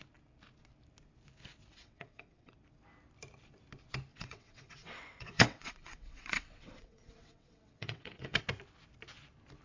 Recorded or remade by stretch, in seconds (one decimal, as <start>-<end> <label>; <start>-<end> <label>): 0.0-1.7 recorded; 1.7-2.5 remade; 2.5-4.1 recorded; 4.1-8.4 remade; 8.4-9.6 recorded